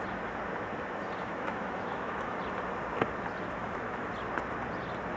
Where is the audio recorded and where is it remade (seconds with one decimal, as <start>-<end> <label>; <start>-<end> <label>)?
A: 0.0-1.2 recorded; 1.2-2.4 remade; 2.4-3.6 recorded; 3.6-4.1 remade; 4.1-5.2 recorded

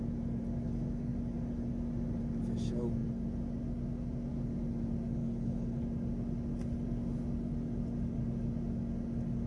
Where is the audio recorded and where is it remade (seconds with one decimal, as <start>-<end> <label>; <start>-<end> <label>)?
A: 0.0-5.2 recorded; 5.2-5.8 remade; 5.8-9.5 recorded

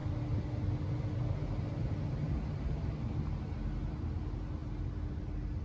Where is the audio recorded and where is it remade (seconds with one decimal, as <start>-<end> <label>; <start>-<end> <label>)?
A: 0.0-5.6 recorded

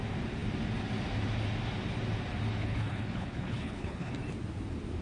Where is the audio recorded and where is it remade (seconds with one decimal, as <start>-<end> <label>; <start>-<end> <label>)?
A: 0.0-2.6 recorded; 2.6-4.1 remade; 4.1-5.0 recorded

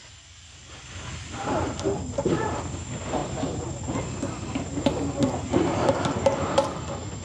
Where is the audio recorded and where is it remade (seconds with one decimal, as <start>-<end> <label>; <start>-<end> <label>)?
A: 0.0-7.2 recorded